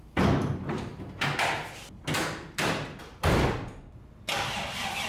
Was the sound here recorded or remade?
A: recorded